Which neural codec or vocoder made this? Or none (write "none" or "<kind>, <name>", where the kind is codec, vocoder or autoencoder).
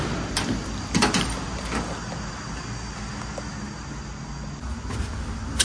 none